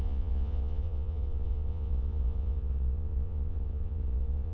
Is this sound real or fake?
fake